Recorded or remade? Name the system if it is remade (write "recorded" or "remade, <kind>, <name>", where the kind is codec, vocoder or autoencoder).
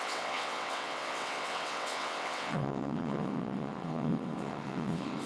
remade, vocoder, WaveNeXt